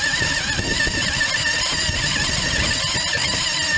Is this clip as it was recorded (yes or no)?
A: no